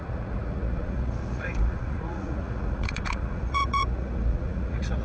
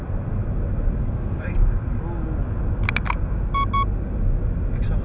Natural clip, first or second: second